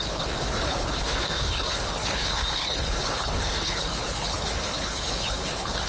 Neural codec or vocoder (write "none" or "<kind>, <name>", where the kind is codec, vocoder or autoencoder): codec, HILCodec